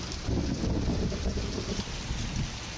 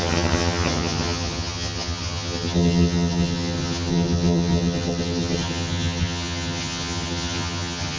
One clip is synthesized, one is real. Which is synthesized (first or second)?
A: second